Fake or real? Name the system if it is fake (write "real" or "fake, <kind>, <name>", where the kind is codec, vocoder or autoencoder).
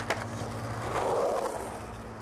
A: real